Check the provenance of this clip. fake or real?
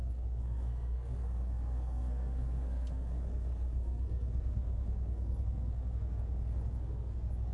fake